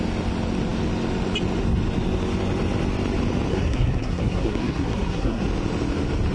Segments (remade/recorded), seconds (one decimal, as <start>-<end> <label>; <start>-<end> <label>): 0.0-3.5 recorded; 3.5-5.4 remade; 5.4-6.3 recorded